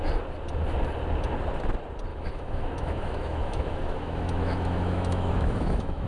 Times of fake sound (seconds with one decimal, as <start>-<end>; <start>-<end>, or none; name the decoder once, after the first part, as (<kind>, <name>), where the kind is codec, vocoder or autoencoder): 2.1-6.1 (autoencoder, DAC-VAE)